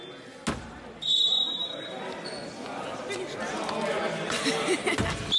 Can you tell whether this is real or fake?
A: real